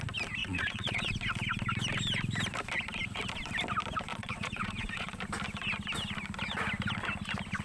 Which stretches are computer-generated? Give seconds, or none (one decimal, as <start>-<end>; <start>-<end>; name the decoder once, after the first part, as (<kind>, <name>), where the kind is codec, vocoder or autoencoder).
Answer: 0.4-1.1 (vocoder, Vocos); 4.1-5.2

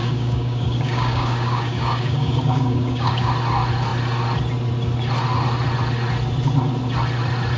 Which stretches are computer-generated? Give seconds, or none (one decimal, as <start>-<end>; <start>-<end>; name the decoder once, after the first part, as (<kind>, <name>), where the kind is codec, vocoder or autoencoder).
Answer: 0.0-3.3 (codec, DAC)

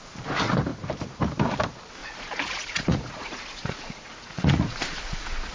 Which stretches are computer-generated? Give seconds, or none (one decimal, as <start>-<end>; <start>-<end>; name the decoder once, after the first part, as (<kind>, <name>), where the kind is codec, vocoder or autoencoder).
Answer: 2.0-5.5 (vocoder, Vocos)

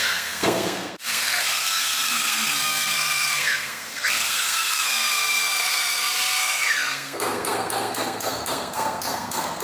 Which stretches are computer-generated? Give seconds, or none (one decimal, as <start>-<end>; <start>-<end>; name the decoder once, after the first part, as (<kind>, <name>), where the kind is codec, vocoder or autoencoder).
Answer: 0.0-9.6 (codec, SNAC)